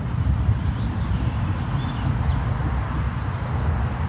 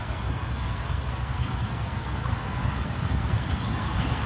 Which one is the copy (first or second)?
second